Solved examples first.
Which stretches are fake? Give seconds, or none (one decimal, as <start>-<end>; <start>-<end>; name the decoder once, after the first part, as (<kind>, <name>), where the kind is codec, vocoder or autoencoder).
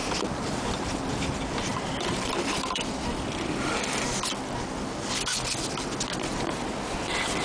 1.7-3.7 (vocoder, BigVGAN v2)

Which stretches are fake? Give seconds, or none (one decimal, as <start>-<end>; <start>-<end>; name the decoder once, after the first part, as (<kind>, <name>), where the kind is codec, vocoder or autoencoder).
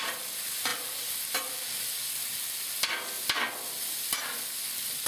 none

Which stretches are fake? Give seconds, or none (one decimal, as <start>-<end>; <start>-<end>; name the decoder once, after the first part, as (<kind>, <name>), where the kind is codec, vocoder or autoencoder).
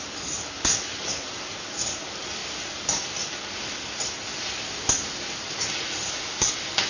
0.9-1.4 (vocoder, BigVGAN v2)